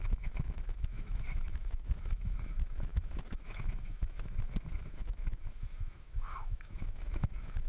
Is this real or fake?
fake